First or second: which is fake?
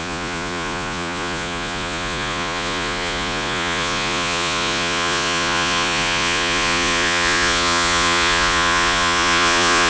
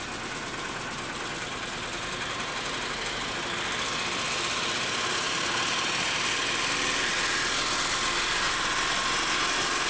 first